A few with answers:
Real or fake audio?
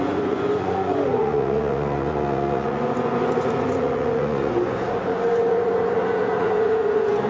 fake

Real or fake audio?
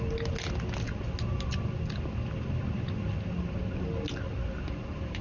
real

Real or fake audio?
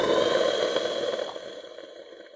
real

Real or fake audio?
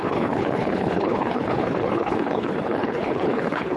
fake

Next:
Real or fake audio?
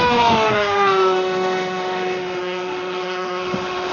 fake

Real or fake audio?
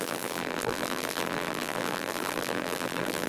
fake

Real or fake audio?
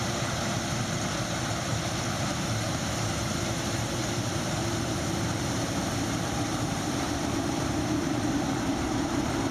fake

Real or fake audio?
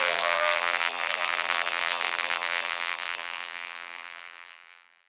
fake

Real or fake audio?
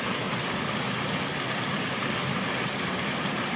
real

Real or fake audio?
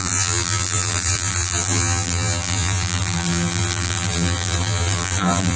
fake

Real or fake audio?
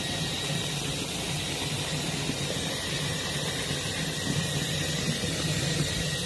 real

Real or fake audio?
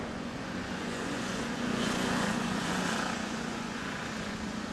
fake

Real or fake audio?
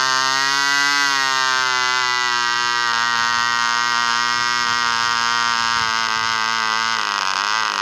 real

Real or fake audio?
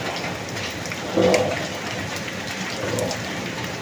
real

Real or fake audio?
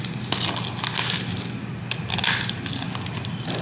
real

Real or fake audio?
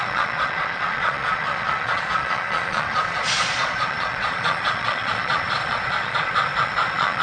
fake